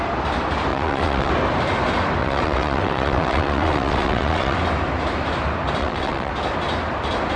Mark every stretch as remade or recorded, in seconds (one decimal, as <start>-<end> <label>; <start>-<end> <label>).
0.0-0.7 recorded; 0.7-1.3 remade; 1.3-2.2 recorded; 2.2-4.6 remade; 4.6-5.8 recorded; 5.8-6.3 remade; 6.3-7.4 recorded